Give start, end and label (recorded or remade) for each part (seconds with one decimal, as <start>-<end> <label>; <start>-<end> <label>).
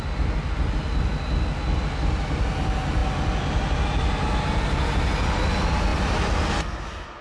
0.0-5.9 recorded; 5.9-6.4 remade; 6.4-7.2 recorded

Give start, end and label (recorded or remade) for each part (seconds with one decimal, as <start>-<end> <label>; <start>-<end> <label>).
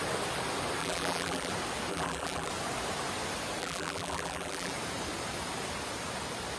0.0-0.8 recorded; 0.8-1.5 remade; 1.5-1.9 recorded; 1.9-2.5 remade; 2.5-3.6 recorded; 3.6-4.7 remade; 4.7-6.6 recorded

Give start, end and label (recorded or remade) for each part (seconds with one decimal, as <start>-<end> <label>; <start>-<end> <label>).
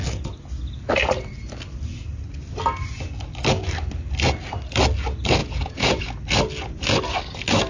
0.0-5.4 recorded; 5.4-6.0 remade; 6.0-7.7 recorded